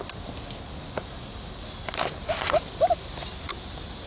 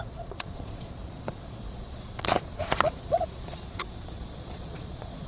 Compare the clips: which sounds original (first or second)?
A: first